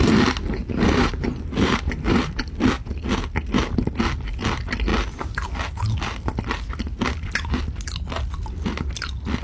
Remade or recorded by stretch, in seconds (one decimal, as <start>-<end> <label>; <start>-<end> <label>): 0.0-0.6 recorded; 0.6-2.6 remade; 2.6-9.4 recorded